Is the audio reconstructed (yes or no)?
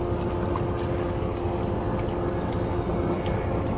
no